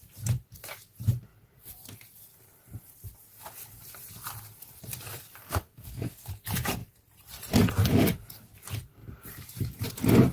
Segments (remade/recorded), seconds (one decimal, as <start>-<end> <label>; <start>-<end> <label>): 0.0-5.4 recorded; 5.4-6.3 remade; 6.3-10.3 recorded